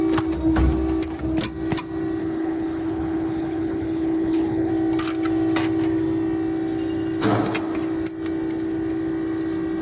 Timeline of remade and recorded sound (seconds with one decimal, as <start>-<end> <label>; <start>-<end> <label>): 0.0-2.2 recorded; 2.2-4.7 remade; 4.7-9.8 recorded